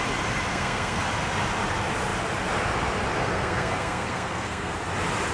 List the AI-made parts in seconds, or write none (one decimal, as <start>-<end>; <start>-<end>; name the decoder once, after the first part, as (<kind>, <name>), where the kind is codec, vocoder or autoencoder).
0.5-1.0 (codec, SNAC); 3.2-4.7